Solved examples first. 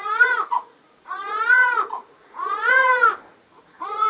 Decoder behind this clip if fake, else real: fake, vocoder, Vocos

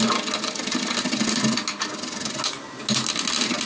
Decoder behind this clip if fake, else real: real